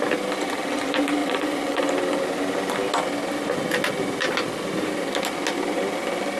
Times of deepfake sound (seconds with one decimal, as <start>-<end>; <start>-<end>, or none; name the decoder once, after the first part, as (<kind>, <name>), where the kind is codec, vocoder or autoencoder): 1.2-1.8 (vocoder, Vocos)